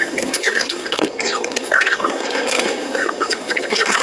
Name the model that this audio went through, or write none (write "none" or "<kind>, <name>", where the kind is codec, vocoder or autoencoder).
codec, SNAC